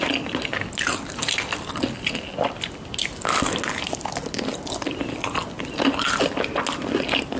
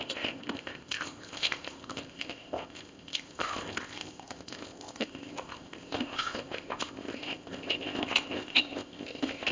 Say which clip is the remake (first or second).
second